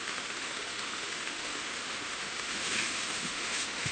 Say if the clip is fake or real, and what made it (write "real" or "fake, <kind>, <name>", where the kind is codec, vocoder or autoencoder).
fake, autoencoder, DAC-VAE